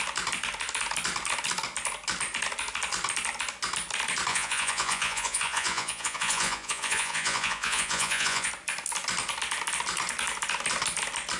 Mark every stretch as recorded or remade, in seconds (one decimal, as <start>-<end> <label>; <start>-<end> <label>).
0.0-4.3 recorded; 4.3-8.5 remade; 8.5-11.4 recorded